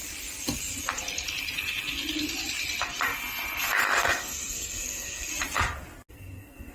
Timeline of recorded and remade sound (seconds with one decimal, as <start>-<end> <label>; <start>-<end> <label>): 0.0-4.0 recorded; 4.0-5.3 remade; 5.3-6.1 recorded; 6.1-6.7 remade